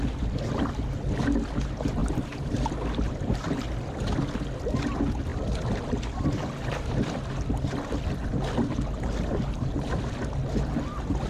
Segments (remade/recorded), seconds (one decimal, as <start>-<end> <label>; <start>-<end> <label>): 0.0-2.0 recorded; 2.0-3.5 remade; 3.5-5.3 recorded; 5.3-6.9 remade; 6.9-11.3 recorded